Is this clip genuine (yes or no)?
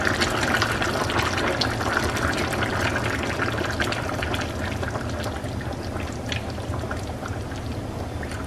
yes